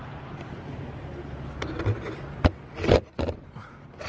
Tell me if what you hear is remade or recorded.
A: recorded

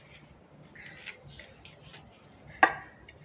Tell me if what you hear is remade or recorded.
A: recorded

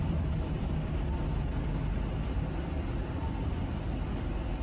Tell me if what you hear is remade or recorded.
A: recorded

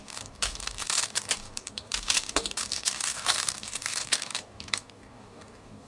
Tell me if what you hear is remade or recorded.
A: remade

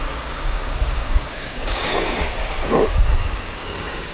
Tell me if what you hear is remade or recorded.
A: remade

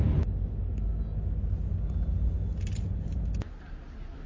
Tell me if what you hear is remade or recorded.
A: recorded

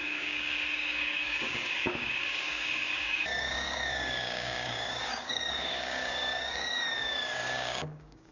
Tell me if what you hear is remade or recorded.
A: remade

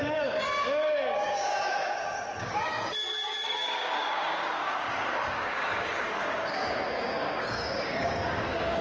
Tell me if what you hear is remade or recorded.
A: remade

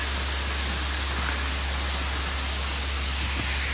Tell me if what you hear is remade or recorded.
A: recorded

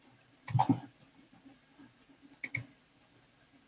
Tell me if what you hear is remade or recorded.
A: recorded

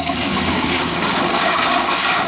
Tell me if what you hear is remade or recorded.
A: remade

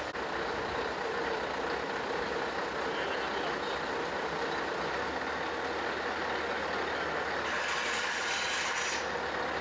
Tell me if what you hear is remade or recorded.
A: recorded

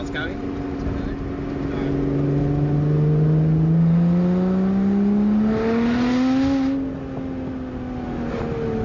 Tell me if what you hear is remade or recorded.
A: recorded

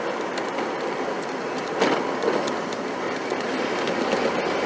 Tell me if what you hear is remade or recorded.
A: recorded